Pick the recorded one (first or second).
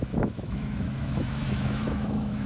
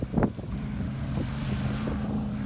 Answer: second